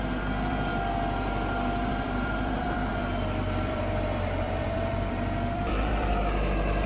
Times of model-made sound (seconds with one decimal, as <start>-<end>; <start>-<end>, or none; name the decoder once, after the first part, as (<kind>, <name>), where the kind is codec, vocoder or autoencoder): 0.0-0.7 (vocoder, BigVGAN v2); 1.9-6.9